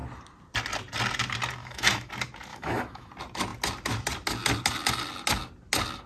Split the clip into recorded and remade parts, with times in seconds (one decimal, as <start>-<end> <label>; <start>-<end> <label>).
0.0-1.6 recorded; 1.6-2.1 remade; 2.1-2.5 recorded; 2.5-3.1 remade; 3.1-6.1 recorded